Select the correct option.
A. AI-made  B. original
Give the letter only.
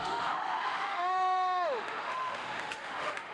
A